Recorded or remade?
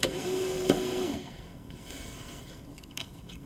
remade